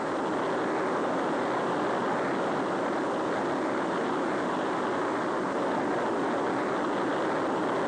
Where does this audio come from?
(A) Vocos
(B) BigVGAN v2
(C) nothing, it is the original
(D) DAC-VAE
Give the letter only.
C